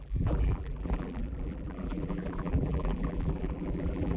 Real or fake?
fake